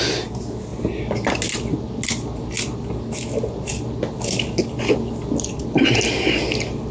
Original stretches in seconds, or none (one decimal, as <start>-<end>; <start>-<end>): 0.0-6.9